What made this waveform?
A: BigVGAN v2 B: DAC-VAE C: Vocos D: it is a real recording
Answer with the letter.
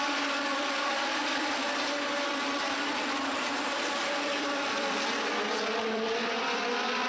A